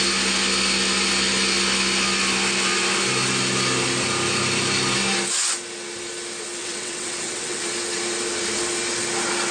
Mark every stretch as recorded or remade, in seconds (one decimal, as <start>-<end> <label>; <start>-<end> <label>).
0.0-6.6 recorded; 6.6-7.6 remade; 7.6-9.5 recorded